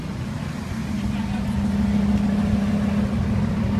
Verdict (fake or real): real